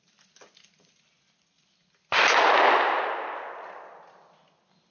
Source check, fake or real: real